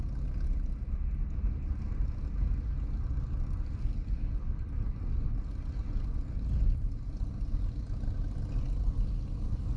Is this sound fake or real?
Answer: real